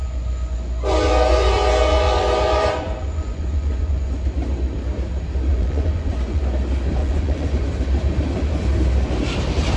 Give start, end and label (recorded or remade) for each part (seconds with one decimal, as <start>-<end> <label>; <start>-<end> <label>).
0.0-4.1 remade; 4.1-5.5 recorded; 5.5-6.4 remade; 6.4-7.0 recorded; 7.0-7.6 remade; 7.6-9.8 recorded